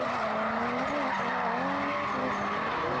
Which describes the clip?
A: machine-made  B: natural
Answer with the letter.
B